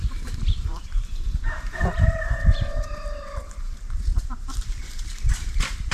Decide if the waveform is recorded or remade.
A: remade